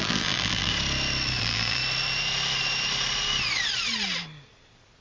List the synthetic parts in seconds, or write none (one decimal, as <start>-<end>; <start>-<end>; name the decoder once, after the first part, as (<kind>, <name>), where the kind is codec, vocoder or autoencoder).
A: 0.0-0.7 (vocoder, BigVGAN v2); 1.4-1.8